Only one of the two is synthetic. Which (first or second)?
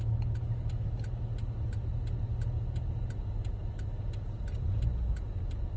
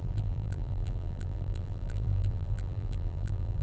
second